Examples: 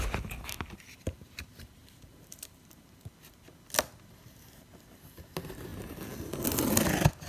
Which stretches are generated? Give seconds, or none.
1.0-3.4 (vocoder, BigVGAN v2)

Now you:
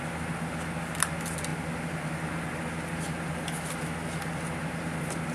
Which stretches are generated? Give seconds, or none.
none

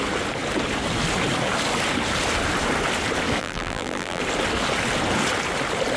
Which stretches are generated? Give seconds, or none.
3.4-4.2 (vocoder, BigVGAN v2)